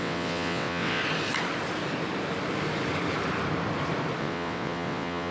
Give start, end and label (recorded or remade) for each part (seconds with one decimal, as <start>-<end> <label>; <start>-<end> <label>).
0.0-1.0 remade; 1.0-4.2 recorded; 4.2-5.3 remade